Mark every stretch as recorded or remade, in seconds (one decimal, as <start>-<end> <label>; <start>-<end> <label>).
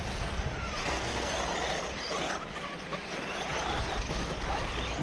0.0-0.8 recorded; 0.8-1.3 remade; 1.3-5.0 recorded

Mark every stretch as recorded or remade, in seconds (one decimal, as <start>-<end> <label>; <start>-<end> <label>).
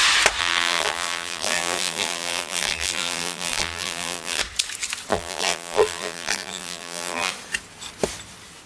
0.0-0.4 recorded; 0.4-4.4 remade; 4.4-5.1 recorded; 5.1-7.3 remade; 7.3-8.7 recorded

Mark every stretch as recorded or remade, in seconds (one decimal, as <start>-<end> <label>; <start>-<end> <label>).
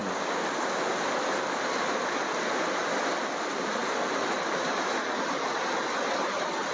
0.0-6.7 recorded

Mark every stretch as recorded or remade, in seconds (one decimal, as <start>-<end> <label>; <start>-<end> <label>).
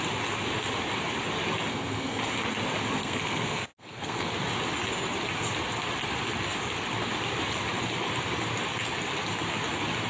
0.0-1.7 recorded; 1.7-2.2 remade; 2.2-3.0 recorded; 3.0-4.3 remade; 4.3-10.1 recorded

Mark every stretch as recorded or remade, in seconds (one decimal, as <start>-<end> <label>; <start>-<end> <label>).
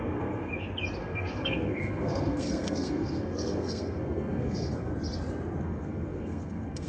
0.0-0.5 remade; 0.5-1.0 recorded; 1.0-4.9 remade; 4.9-5.6 recorded; 5.6-6.9 remade